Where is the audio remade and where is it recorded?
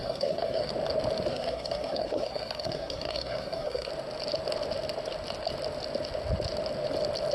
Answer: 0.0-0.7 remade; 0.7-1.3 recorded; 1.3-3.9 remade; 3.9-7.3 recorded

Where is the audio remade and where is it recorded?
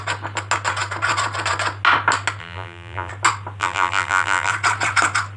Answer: 0.0-2.4 recorded; 2.4-3.1 remade; 3.1-3.6 recorded; 3.6-4.5 remade; 4.5-5.4 recorded